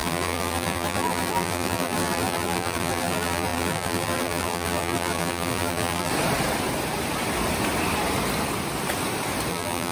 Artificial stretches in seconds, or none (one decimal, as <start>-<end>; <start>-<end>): 0.0-6.1; 9.5-9.9